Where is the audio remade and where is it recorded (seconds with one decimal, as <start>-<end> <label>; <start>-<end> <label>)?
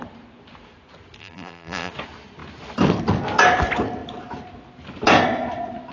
0.0-1.2 recorded; 1.2-1.9 remade; 1.9-5.9 recorded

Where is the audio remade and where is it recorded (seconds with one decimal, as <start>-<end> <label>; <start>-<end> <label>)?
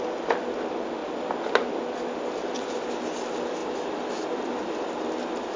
0.0-5.6 recorded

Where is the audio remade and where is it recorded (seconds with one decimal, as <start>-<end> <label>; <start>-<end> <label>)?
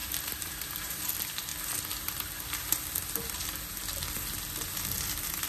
0.0-1.0 remade; 1.0-5.5 recorded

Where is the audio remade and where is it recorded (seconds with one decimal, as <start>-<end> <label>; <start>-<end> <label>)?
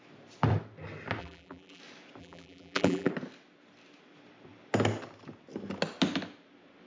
0.0-1.2 recorded; 1.2-1.8 remade; 1.8-2.2 recorded; 2.2-3.1 remade; 3.1-6.9 recorded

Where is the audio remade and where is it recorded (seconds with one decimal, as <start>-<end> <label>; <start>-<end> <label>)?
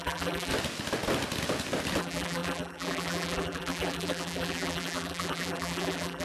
0.0-0.5 remade; 0.5-2.0 recorded; 2.0-6.2 remade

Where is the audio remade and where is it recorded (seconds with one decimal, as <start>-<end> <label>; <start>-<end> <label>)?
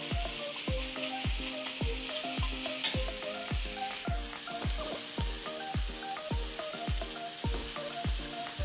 0.0-7.6 recorded; 7.6-8.6 remade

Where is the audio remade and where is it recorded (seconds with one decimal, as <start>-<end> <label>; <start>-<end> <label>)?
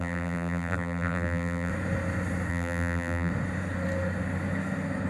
0.0-1.7 remade; 1.7-2.5 recorded; 2.5-3.3 remade; 3.3-5.1 recorded